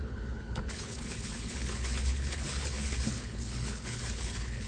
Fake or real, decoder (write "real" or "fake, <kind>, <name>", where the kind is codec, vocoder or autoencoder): fake, codec, HILCodec